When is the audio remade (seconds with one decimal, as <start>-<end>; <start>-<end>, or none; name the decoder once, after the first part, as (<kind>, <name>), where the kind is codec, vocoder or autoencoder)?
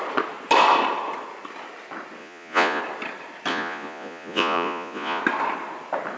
2.2-2.8 (vocoder, Vocos); 3.5-5.2